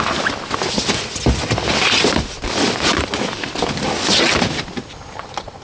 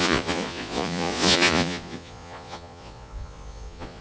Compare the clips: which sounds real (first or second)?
first